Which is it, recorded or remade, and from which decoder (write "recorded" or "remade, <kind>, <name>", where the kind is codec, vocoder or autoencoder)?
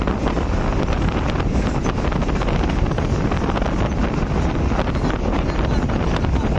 recorded